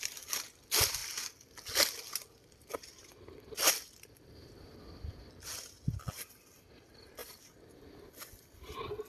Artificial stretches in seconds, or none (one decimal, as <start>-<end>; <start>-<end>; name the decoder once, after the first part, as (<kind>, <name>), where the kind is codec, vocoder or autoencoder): none